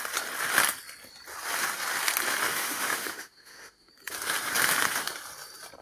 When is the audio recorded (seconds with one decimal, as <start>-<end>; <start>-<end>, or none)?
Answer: 0.0-2.5; 3.9-5.8

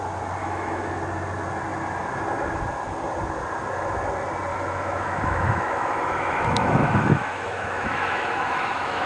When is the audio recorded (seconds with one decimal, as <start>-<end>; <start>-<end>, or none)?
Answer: 0.0-0.4; 1.0-4.5

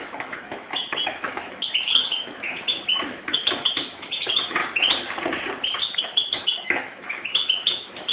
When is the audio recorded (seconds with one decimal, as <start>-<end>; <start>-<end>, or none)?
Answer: 4.6-6.0

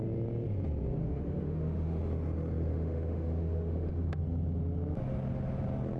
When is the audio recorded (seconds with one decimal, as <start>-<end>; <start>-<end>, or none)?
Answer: 0.0-1.0; 2.0-2.7; 4.2-6.0

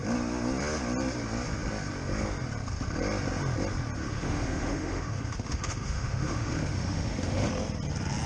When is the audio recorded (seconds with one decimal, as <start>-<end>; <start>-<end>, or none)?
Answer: 0.0-4.0; 7.5-8.3

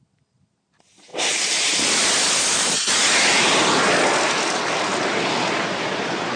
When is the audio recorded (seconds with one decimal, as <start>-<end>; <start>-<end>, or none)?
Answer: 0.0-6.4